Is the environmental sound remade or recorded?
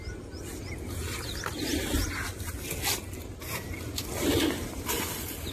recorded